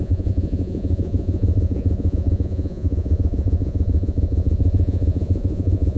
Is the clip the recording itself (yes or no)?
no